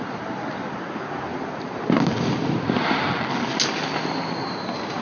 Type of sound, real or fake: real